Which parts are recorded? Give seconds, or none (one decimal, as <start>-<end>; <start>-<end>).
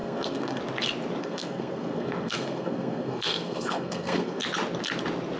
0.6-1.2; 4.4-5.4